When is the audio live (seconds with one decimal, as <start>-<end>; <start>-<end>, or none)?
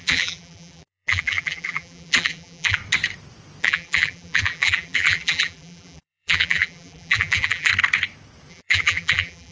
2.8-3.6; 7.7-8.5